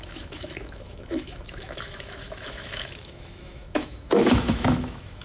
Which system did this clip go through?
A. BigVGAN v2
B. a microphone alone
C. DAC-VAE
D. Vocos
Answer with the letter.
C